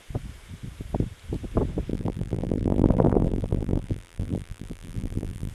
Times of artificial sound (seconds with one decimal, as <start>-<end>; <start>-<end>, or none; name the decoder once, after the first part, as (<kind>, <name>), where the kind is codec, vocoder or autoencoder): 1.9-5.5 (vocoder, BigVGAN v2)

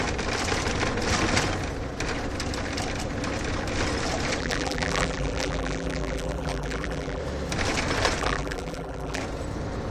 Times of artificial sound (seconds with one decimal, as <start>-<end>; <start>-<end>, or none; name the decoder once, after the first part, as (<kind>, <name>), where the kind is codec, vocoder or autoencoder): 4.4-7.2 (vocoder, BigVGAN v2); 8.2-9.2

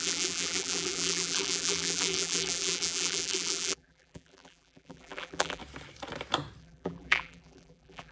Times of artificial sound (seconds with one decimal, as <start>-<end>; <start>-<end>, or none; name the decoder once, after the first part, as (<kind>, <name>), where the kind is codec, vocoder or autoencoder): 0.0-5.6 (vocoder, BigVGAN v2); 6.6-8.1